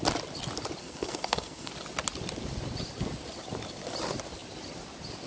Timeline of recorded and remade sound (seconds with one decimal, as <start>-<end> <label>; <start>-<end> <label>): 0.0-0.8 recorded; 0.8-1.7 remade; 1.7-5.3 recorded